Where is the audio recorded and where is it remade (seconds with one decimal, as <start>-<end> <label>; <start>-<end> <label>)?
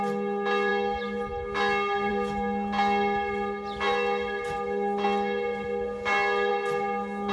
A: 0.0-7.3 recorded